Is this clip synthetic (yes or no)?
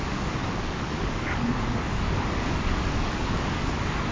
yes